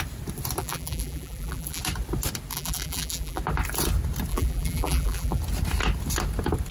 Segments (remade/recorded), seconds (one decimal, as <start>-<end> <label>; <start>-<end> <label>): 0.0-0.6 recorded; 0.6-1.8 remade; 1.8-2.5 recorded; 2.5-3.4 remade; 3.4-4.3 recorded; 4.3-5.4 remade; 5.4-6.7 recorded